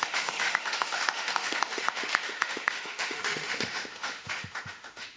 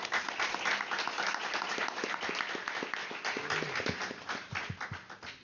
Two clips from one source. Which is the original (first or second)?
second